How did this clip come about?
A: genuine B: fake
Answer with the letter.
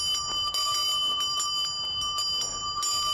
A